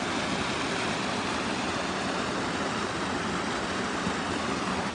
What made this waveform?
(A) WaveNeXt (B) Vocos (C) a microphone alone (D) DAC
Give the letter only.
C